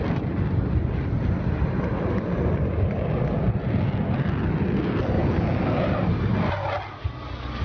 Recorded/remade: recorded